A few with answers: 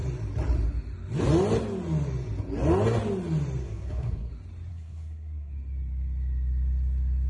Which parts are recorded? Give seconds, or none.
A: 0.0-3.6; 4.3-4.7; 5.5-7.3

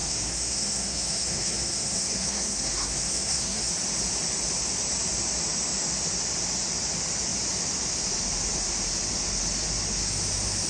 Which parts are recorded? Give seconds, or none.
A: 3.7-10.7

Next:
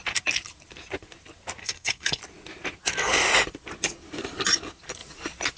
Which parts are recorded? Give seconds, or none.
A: 0.0-1.6; 2.2-5.6

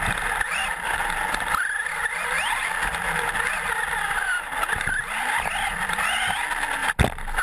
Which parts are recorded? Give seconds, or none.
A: 0.0-7.4

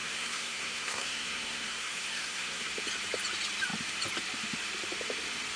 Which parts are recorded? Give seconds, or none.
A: 2.7-5.6